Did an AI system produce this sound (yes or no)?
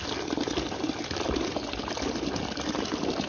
no